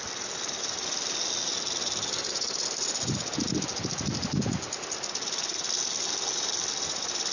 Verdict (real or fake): real